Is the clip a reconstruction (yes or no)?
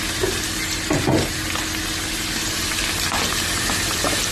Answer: no